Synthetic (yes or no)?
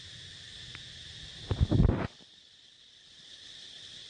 no